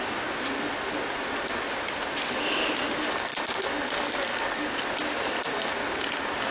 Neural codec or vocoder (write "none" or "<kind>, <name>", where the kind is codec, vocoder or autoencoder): none